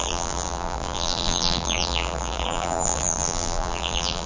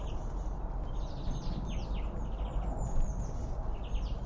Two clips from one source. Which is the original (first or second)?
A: second